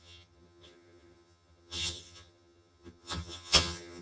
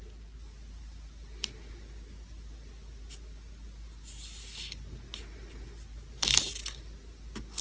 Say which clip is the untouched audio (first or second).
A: second